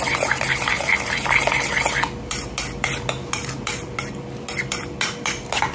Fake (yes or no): no